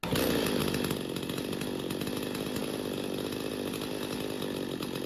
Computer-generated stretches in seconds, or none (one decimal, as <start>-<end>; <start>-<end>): none